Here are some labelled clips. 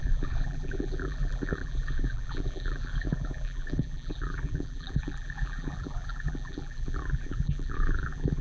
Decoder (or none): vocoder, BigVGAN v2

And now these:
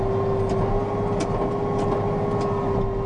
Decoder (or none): none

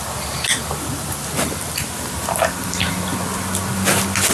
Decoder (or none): none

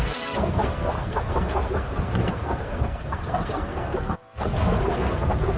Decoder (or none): codec, SNAC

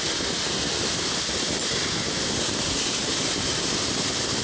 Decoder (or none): none